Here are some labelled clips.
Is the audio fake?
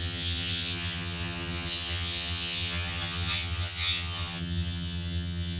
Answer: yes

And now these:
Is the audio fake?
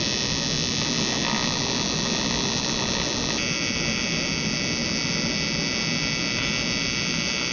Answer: no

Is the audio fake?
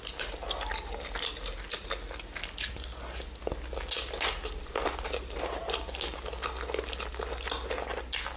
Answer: no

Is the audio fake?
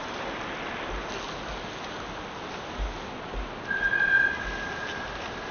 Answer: no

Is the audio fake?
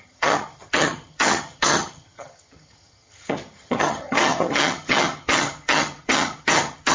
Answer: yes